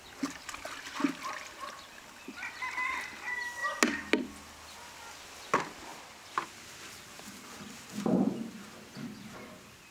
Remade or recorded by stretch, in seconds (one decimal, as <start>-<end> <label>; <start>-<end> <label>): 0.0-9.9 recorded